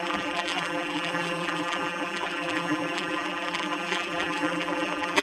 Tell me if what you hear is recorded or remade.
remade